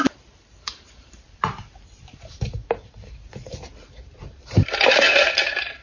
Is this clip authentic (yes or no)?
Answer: no